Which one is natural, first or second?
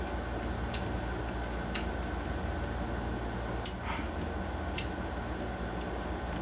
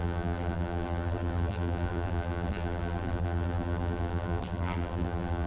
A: first